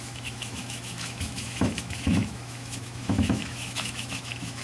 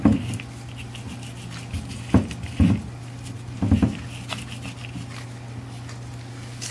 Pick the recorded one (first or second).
second